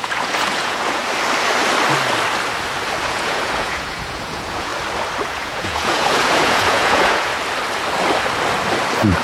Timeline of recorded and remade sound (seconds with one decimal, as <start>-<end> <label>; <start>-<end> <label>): 0.0-1.0 remade; 1.0-3.0 recorded; 3.0-4.7 remade; 4.7-5.3 recorded; 5.3-7.3 remade; 7.3-9.2 recorded